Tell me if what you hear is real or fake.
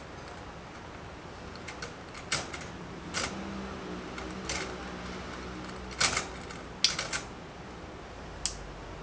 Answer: real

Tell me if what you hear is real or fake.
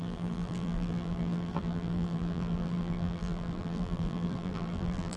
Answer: fake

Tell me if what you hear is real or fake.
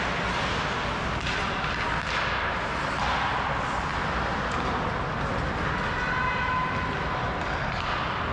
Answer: real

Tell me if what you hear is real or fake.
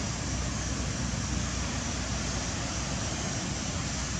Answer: real